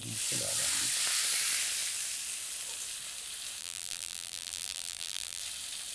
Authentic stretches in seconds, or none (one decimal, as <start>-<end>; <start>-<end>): 0.0-3.6; 5.4-5.9